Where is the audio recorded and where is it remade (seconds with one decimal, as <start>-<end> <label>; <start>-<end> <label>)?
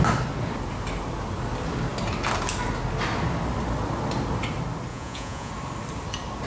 0.0-4.9 recorded; 4.9-5.5 remade; 5.5-6.5 recorded